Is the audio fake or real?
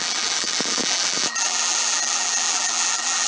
fake